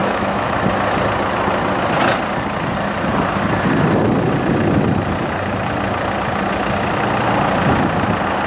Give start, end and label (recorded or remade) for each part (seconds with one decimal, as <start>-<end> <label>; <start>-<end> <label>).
0.0-0.6 remade; 0.6-8.5 recorded